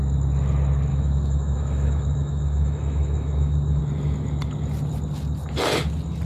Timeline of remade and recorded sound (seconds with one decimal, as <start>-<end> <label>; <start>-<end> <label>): 0.0-0.9 recorded; 0.9-3.8 remade; 3.8-6.3 recorded